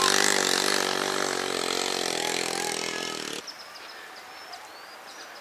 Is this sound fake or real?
real